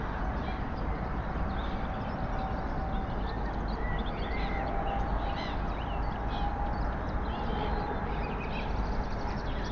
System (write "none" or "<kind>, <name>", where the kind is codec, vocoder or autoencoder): none